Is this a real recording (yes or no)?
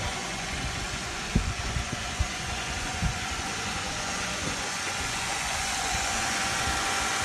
no